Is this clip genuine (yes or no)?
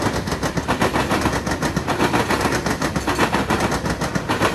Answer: yes